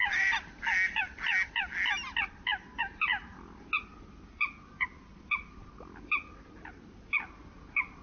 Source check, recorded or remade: recorded